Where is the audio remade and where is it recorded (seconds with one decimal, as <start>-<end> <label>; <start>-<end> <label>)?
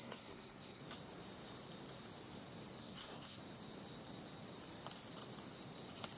0.0-0.8 remade; 0.8-2.8 recorded; 2.8-3.4 remade; 3.4-6.2 recorded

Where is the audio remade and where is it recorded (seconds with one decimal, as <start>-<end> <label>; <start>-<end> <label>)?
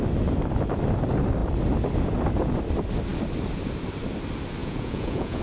0.0-4.6 recorded; 4.6-5.4 remade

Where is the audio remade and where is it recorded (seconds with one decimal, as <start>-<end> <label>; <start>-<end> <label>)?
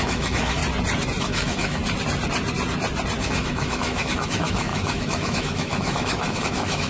0.0-0.6 remade; 0.6-1.2 recorded; 1.2-1.8 remade; 1.8-3.2 recorded; 3.2-6.9 remade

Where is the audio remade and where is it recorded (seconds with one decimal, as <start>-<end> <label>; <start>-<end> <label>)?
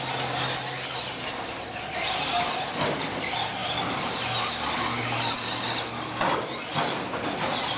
0.0-7.8 recorded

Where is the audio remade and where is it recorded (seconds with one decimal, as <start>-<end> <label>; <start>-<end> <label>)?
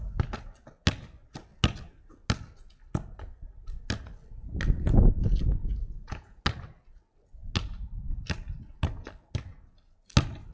0.0-5.6 recorded; 5.6-6.4 remade; 6.4-10.5 recorded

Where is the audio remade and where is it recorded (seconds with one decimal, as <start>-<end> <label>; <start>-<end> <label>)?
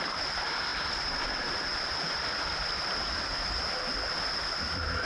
0.0-5.0 recorded